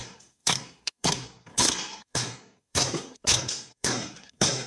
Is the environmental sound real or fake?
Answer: fake